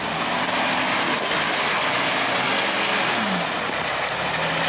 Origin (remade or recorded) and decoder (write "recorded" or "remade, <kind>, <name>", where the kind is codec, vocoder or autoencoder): recorded